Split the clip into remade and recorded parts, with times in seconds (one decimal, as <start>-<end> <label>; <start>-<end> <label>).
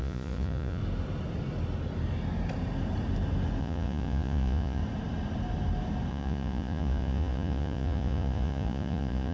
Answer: 0.0-0.8 remade; 0.8-3.6 recorded; 3.6-4.8 remade; 4.8-6.1 recorded; 6.1-9.3 remade